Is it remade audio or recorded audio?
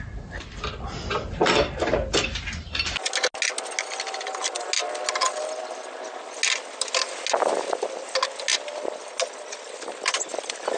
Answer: recorded